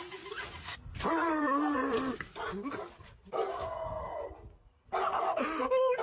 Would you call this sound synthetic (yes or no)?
no